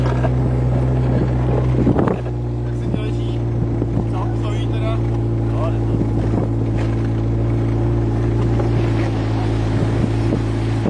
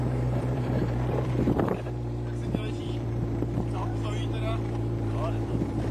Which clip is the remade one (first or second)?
second